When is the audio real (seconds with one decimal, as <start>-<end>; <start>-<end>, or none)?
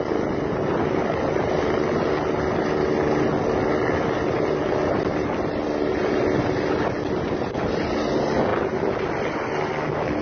0.0-10.2